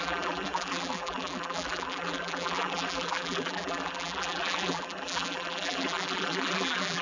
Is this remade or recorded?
remade